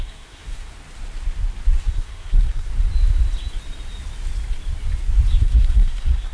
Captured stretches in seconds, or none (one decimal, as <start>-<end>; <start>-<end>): 0.7-1.8; 2.7-5.4